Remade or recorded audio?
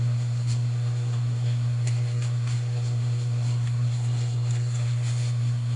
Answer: remade